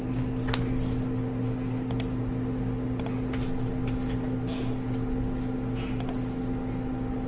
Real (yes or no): yes